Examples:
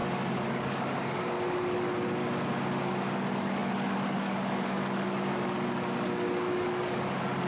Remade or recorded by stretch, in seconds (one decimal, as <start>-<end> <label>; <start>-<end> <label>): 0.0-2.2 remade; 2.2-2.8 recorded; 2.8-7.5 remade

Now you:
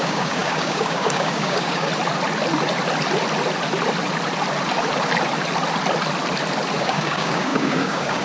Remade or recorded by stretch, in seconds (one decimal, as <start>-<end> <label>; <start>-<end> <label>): 0.0-1.9 remade; 1.9-6.8 recorded; 6.8-8.2 remade

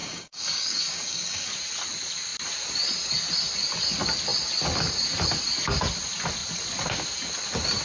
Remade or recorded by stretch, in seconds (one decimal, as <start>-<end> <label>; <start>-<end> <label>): 0.0-1.5 remade; 1.5-7.8 recorded

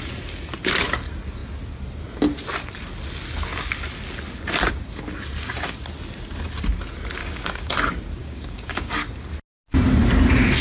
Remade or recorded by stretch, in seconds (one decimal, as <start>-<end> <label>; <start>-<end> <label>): 0.0-7.2 recorded; 7.2-7.7 remade; 7.7-8.2 recorded; 8.2-8.9 remade; 8.9-10.6 recorded

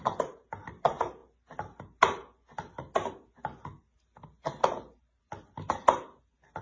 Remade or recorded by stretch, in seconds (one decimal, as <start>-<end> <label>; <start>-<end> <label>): 0.0-6.6 recorded